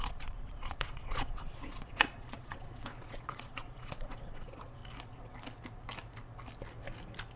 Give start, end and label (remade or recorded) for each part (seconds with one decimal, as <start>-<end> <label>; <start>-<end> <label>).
0.0-4.8 remade; 4.8-7.4 recorded